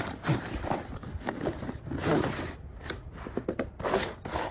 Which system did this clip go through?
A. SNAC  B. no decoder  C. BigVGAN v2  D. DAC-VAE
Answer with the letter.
B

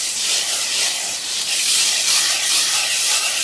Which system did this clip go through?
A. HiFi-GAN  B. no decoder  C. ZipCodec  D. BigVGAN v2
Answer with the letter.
D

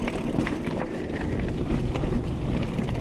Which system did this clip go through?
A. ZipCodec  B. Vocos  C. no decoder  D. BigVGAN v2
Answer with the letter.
D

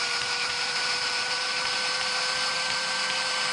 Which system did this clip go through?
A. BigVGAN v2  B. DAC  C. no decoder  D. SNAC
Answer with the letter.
A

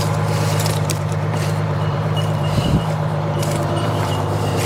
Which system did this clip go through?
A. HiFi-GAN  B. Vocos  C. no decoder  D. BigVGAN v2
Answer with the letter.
D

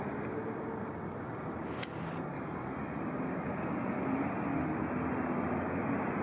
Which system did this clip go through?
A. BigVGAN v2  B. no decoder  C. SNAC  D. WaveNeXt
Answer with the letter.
B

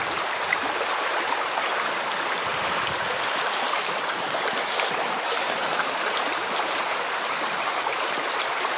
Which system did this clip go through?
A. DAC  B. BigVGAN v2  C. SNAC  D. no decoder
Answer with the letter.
B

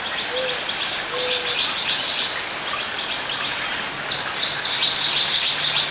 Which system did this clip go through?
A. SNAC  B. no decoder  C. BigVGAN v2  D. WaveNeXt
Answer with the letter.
B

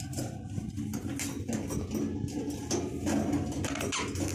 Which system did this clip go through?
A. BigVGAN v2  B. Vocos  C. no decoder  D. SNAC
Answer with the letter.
C